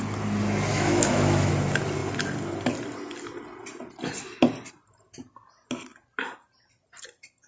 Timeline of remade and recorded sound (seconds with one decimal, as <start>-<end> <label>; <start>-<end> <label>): 0.0-0.7 recorded; 0.7-1.5 remade; 1.5-7.5 recorded